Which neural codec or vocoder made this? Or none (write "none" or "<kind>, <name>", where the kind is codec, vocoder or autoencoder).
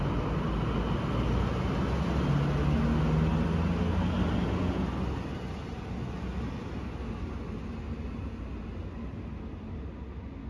none